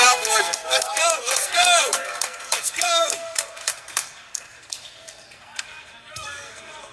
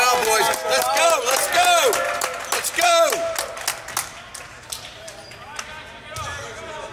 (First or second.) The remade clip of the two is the first